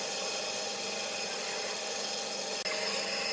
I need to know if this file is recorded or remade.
recorded